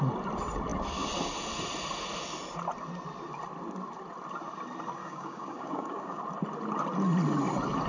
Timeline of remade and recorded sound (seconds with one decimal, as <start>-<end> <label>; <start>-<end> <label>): 0.0-5.0 recorded; 5.0-6.2 remade; 6.2-7.9 recorded